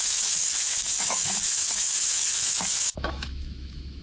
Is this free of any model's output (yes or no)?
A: no